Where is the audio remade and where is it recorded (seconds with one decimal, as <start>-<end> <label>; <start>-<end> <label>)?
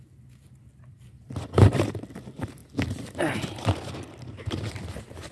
0.0-5.3 recorded